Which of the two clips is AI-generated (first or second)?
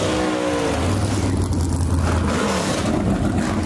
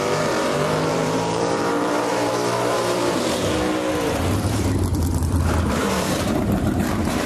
second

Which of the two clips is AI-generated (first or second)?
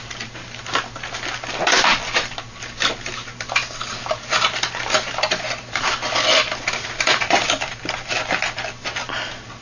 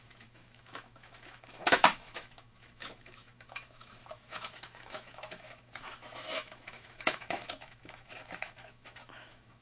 second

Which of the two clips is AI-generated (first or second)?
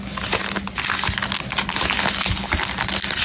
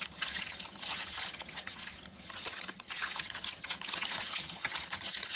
second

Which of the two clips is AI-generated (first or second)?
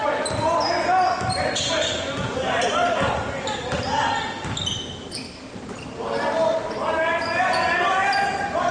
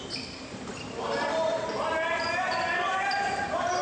second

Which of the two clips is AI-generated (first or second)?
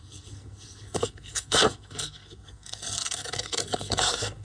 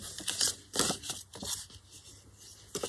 first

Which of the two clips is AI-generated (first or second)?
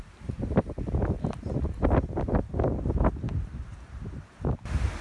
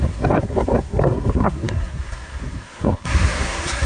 second